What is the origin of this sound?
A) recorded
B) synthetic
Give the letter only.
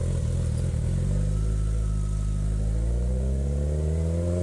A